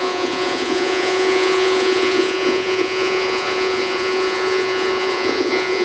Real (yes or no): no